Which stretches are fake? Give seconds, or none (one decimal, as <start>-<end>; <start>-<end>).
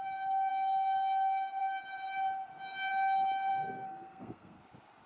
3.5-4.6